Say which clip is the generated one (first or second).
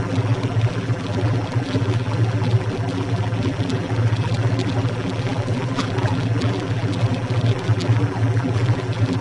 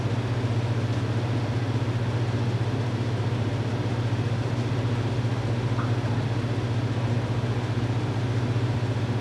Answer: first